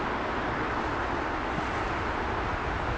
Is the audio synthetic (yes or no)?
no